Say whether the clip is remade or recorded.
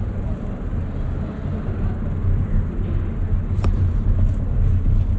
recorded